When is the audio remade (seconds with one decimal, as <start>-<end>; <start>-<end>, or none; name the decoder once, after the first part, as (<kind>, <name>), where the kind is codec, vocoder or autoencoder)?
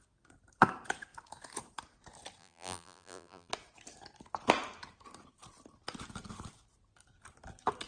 2.4-3.5 (vocoder, BigVGAN v2)